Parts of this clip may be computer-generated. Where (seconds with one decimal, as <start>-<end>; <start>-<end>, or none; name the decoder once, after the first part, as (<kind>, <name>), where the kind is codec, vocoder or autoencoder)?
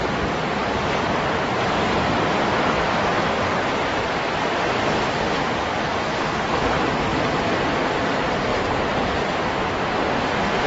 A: 8.5-9.0 (vocoder, BigVGAN v2)